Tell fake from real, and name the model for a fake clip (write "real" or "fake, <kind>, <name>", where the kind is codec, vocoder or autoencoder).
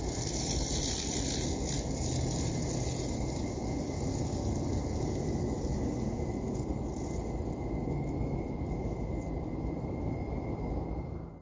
real